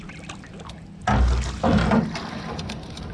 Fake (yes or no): no